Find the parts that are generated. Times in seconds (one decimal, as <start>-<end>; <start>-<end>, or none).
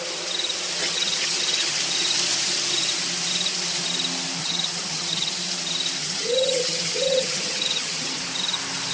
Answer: 0.8-1.8; 4.4-5.3; 6.0-8.2